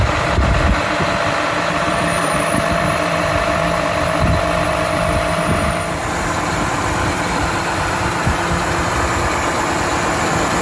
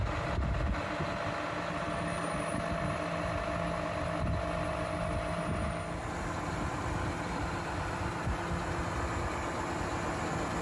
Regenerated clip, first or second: first